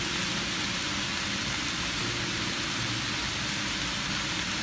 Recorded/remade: recorded